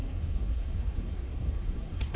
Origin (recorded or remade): remade